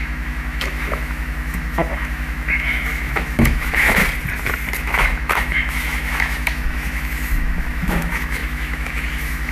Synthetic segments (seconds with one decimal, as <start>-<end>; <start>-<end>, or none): 0.0-4.0; 4.8-9.5